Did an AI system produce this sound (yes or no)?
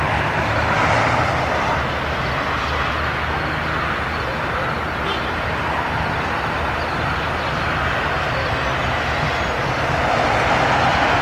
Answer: no